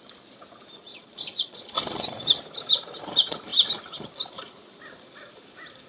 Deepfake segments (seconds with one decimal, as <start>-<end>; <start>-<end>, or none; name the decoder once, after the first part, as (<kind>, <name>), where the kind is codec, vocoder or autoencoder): 0.9-2.2 (vocoder, Vocos)